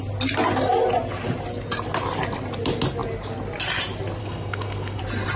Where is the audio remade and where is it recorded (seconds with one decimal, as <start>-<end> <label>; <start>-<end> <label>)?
0.0-4.2 recorded; 4.2-5.0 remade; 5.0-5.4 recorded